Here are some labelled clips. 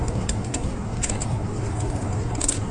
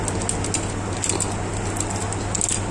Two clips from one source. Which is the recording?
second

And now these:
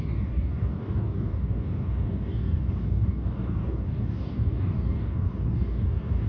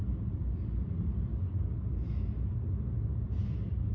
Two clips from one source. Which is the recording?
second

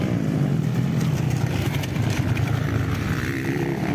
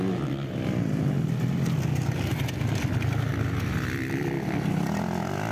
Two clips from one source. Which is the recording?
second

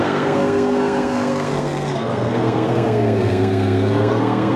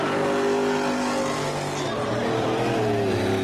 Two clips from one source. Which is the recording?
second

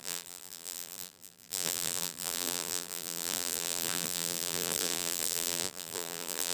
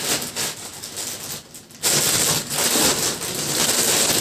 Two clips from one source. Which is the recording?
second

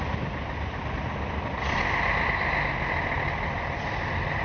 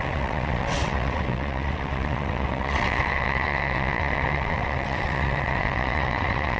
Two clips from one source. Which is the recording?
first